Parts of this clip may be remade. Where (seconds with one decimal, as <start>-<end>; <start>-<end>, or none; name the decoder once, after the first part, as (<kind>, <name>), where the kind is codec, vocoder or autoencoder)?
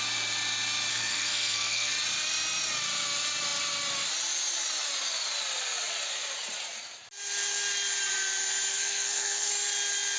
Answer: 0.9-1.9 (codec, SNAC); 8.7-9.5